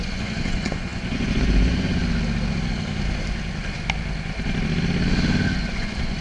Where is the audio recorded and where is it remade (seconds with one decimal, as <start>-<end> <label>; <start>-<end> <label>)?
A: 0.0-2.0 remade; 2.0-5.7 recorded; 5.7-6.2 remade